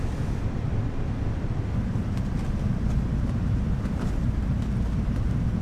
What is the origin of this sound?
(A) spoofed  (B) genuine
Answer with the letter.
B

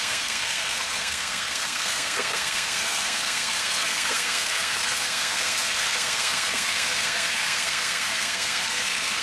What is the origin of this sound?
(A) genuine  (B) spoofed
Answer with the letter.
B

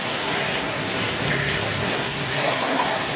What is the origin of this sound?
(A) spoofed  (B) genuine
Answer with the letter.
A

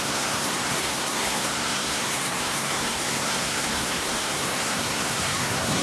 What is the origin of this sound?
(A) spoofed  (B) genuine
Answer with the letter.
A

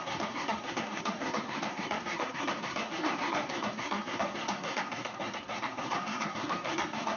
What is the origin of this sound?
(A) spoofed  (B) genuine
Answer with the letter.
A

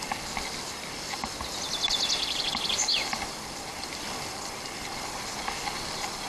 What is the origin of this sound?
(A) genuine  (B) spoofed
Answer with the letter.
A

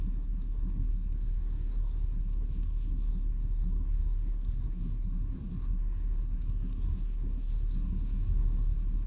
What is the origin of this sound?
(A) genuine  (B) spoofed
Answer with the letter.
B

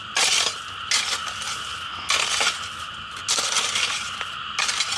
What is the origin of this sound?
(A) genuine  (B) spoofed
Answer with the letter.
A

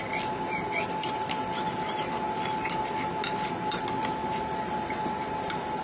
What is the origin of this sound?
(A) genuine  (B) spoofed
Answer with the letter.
A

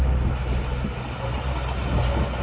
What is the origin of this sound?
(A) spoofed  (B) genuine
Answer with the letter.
B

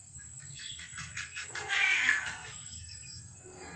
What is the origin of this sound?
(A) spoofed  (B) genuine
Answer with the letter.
A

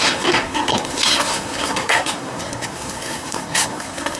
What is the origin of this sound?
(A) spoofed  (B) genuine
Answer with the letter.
A